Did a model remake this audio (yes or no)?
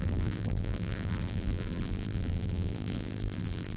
yes